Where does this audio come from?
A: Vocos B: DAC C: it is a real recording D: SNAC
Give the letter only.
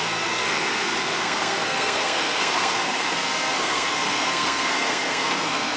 D